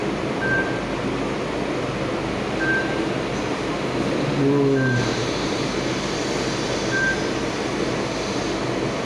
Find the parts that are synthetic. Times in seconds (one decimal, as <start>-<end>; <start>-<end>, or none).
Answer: 5.1-6.2